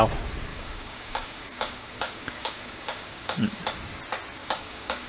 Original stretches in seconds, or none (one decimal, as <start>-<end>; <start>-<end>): 0.0-0.5; 3.6-4.4